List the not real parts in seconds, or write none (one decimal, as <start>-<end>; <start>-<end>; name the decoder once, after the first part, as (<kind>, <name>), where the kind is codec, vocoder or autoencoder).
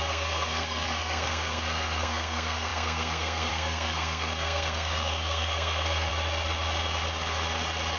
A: 0.0-6.1 (codec, SNAC)